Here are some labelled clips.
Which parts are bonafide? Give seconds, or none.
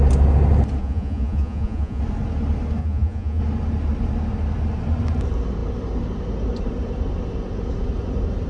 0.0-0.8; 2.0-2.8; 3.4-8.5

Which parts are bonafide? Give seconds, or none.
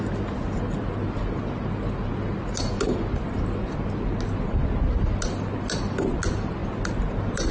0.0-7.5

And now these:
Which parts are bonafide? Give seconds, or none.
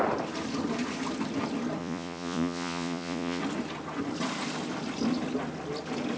0.0-1.8; 3.4-6.2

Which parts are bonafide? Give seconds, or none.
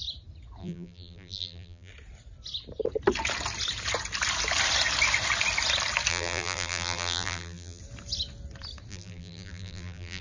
0.0-0.6; 1.9-6.1; 7.8-8.9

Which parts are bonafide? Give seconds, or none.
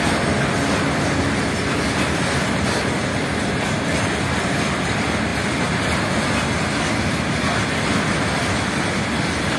0.0-9.6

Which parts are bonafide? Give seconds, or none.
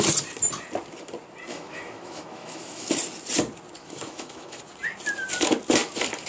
0.0-1.5; 2.9-3.8; 4.6-6.3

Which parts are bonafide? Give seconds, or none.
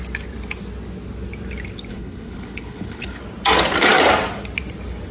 0.0-1.9; 3.2-5.1